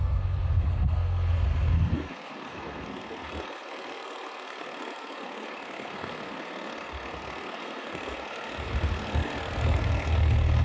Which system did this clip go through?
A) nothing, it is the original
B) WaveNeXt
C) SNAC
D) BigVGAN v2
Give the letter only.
C